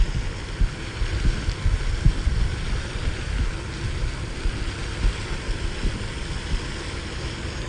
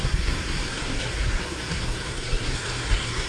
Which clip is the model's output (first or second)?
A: second